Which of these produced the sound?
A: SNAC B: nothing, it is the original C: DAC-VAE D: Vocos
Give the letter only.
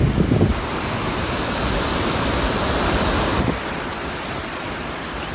B